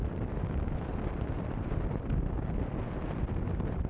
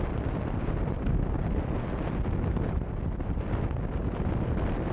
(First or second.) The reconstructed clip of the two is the first